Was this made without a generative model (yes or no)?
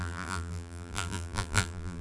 no